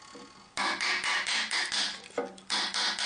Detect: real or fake real